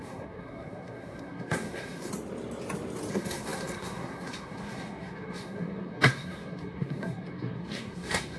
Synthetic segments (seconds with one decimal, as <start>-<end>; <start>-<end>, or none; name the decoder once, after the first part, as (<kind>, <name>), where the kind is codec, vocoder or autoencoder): 0.0-2.1 (codec, SNAC); 3.1-8.4

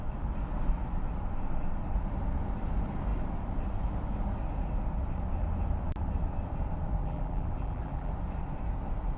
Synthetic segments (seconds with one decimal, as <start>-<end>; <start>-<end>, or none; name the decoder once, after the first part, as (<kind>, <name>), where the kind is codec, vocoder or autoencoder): 7.0-8.1 (vocoder, BigVGAN v2)